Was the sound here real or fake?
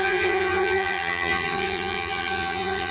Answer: fake